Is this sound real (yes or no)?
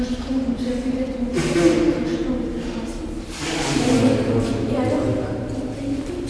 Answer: yes